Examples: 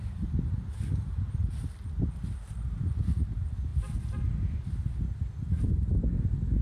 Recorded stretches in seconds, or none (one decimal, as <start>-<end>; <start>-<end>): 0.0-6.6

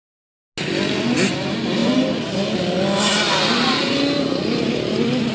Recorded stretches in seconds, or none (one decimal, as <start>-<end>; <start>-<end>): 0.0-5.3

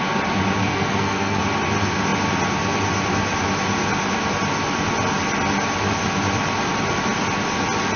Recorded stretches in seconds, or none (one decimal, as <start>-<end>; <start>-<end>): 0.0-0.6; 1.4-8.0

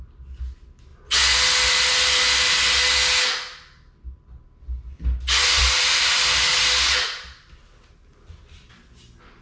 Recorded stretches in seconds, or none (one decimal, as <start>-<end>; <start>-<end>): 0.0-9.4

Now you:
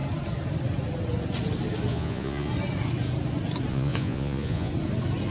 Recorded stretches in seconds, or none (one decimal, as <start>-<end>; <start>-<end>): 0.0-1.9; 2.5-3.7; 4.7-5.3

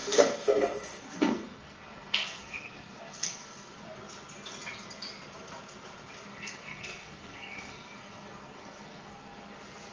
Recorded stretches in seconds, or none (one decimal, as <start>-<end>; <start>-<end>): 3.7-6.3; 9.4-9.9

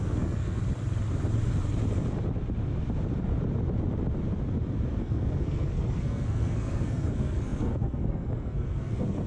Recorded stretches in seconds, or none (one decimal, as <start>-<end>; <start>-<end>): 0.6-5.0